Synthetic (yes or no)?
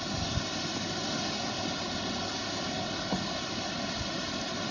no